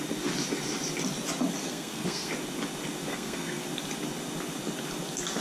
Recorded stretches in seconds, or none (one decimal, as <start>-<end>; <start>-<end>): 0.0-1.6; 2.3-3.1; 3.6-5.4